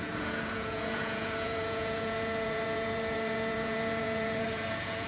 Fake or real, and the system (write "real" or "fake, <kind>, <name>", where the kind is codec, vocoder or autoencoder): fake, vocoder, Vocos